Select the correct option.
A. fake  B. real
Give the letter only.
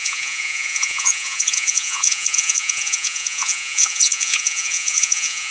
A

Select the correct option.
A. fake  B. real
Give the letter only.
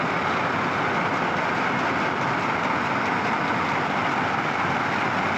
B